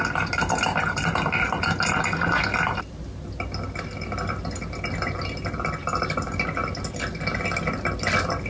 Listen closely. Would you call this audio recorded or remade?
recorded